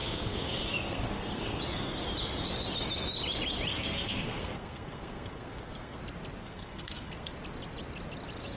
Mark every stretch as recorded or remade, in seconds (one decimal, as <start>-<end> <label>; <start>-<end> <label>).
0.0-1.6 remade; 1.6-3.7 recorded; 3.7-6.0 remade; 6.0-6.4 recorded; 6.4-7.3 remade; 7.3-8.6 recorded